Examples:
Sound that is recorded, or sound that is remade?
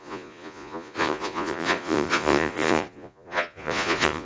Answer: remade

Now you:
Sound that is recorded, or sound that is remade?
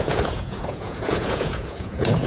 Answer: remade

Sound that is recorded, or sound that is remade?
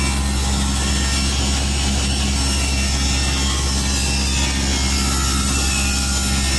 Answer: recorded